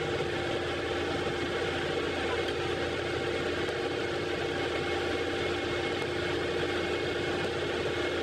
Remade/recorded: recorded